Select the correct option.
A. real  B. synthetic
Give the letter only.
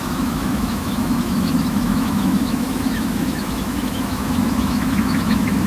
B